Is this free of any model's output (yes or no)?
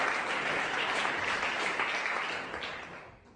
yes